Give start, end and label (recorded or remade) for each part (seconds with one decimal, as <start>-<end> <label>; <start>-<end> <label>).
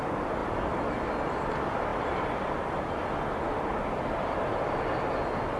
0.0-5.6 recorded